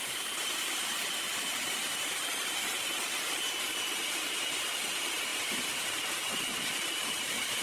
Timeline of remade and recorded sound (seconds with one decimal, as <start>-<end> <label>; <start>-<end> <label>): 0.0-2.6 remade; 2.6-3.9 recorded; 3.9-7.6 remade